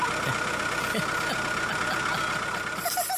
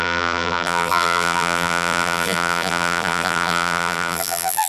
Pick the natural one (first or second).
first